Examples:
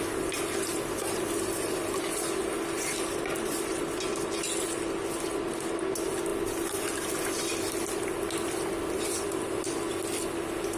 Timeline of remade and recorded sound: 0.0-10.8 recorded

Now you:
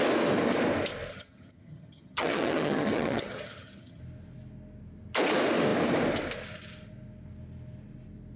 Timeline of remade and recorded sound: 0.0-1.1 recorded; 1.1-4.0 remade; 4.0-8.4 recorded